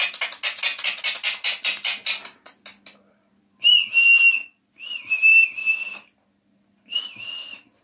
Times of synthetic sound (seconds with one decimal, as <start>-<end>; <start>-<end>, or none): none